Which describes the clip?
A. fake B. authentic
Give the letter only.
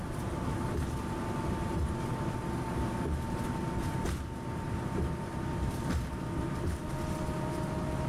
B